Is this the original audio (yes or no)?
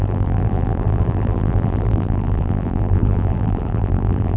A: no